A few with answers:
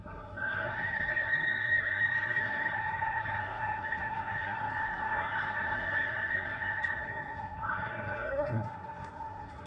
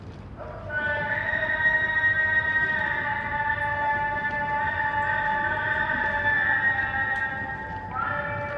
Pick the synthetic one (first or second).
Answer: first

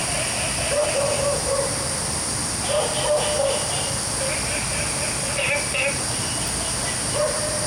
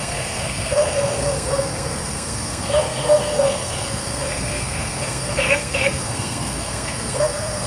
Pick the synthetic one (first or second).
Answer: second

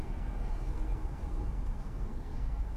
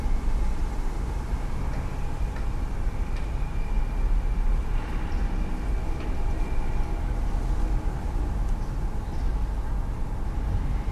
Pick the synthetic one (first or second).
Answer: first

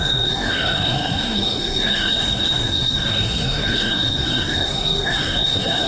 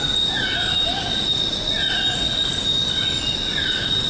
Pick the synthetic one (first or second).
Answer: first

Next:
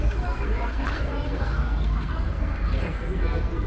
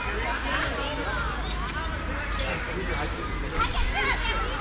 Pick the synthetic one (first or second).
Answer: first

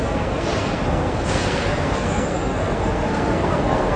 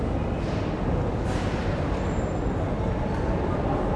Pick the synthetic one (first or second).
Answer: first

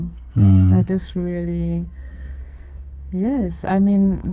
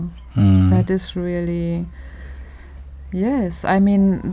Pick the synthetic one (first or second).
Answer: first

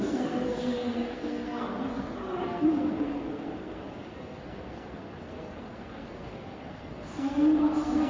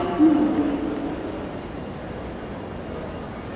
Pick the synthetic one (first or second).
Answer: first